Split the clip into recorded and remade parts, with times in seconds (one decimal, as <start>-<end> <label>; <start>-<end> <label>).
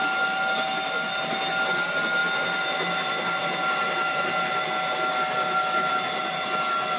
0.0-7.0 recorded